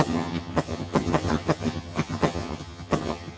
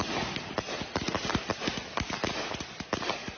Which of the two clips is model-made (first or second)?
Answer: first